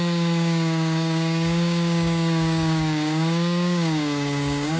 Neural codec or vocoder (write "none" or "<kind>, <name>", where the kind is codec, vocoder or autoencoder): codec, DAC